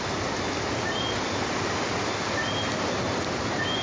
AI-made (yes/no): no